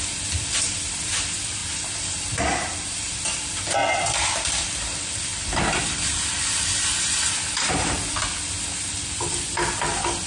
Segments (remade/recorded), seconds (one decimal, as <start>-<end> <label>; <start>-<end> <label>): 0.0-1.6 remade; 1.6-2.9 recorded; 2.9-5.3 remade; 5.3-5.8 recorded; 5.8-8.2 remade; 8.2-8.7 recorded; 8.7-10.3 remade